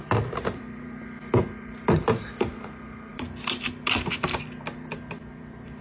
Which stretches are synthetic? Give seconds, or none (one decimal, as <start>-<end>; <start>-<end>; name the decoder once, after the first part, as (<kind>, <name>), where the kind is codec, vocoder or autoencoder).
0.0-5.8 (vocoder, BigVGAN v2)